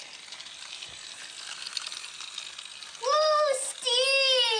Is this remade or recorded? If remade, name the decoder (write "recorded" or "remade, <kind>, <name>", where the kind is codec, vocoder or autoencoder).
recorded